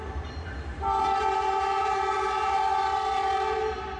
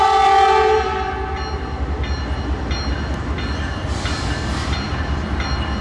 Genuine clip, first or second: second